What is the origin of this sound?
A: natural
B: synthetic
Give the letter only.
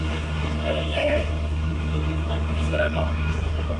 B